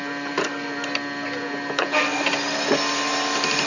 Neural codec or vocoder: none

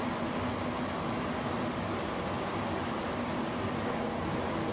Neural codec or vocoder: none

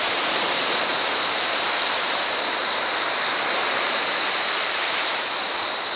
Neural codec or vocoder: vocoder, BigVGAN v2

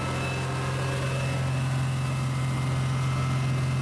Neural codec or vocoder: none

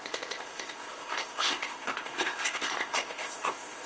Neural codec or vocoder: codec, ZipCodec